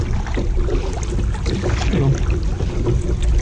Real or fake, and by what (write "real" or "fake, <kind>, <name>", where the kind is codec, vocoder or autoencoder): real